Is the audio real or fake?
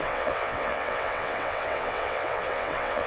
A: fake